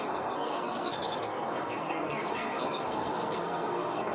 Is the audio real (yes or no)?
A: no